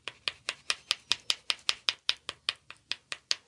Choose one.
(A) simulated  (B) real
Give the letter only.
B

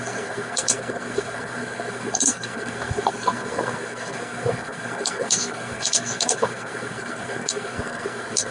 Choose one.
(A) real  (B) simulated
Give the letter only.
B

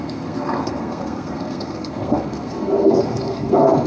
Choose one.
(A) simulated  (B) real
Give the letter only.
A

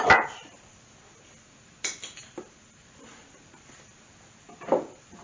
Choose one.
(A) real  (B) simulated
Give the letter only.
A